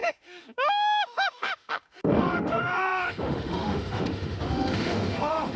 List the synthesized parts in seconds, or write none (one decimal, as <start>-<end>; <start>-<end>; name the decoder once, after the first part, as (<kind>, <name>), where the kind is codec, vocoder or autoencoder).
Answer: 0.0-5.6 (autoencoder, DAC-VAE)